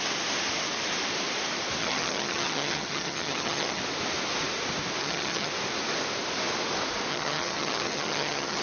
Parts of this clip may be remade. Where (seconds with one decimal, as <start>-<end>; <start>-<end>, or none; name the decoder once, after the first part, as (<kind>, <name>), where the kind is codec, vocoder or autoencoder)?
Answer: 1.8-3.8 (vocoder, HiFi-GAN); 5.0-5.5; 7.1-8.6